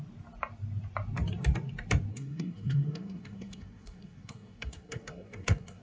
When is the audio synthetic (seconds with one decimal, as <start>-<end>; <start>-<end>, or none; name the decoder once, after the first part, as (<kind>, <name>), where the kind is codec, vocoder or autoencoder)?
2.1-5.8 (codec, SNAC)